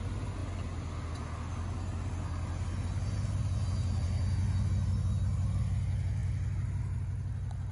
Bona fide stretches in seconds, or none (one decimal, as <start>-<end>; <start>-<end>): 0.0-7.7